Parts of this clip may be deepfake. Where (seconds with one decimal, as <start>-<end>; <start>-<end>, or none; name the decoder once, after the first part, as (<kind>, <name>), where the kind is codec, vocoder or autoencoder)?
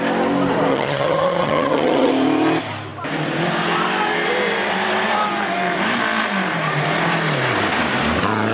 0.7-2.1 (vocoder, HiFi-GAN)